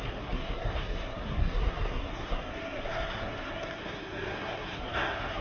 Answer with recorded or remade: remade